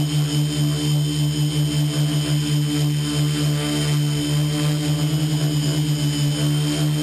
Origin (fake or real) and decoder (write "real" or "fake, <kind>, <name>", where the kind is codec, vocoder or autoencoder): real